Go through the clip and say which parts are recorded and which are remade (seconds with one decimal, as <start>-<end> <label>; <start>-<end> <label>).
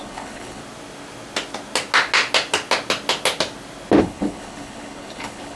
0.0-0.6 remade; 0.6-4.0 recorded; 4.0-5.6 remade